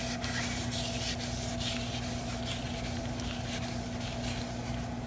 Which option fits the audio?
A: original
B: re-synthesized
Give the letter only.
A